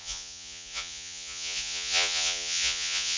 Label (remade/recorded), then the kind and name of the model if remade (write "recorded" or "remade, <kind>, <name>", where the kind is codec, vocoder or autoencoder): remade, vocoder, Vocos